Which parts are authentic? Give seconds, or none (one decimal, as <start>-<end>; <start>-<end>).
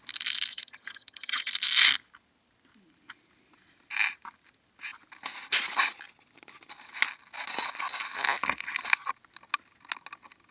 0.0-0.5; 1.5-10.5